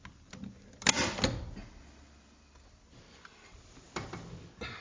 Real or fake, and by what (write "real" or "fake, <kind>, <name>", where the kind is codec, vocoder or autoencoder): real